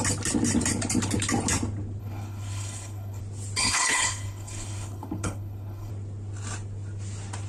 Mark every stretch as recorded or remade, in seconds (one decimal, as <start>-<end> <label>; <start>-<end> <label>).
0.0-2.0 recorded; 2.0-3.2 remade; 3.2-3.6 recorded; 3.6-5.9 remade; 5.9-7.5 recorded